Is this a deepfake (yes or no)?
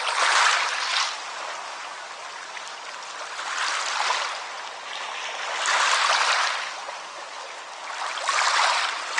no